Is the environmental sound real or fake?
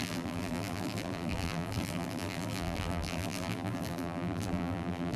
fake